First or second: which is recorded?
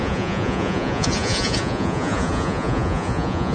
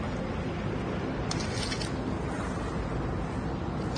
second